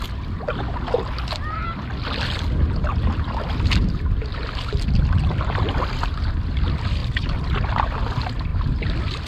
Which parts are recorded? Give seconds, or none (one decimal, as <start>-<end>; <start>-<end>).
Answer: 0.0-7.0; 7.6-8.5